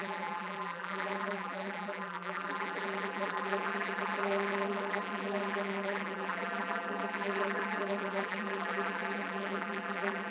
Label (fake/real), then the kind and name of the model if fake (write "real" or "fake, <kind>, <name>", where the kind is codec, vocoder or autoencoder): fake, vocoder, BigVGAN v2